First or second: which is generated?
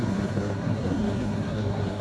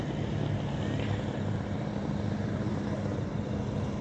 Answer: first